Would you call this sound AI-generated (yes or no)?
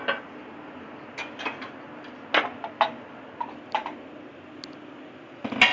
no